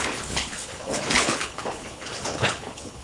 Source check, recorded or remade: remade